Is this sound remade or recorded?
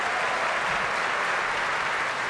recorded